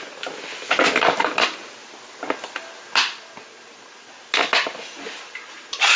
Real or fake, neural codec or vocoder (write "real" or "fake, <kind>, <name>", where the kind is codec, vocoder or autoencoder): real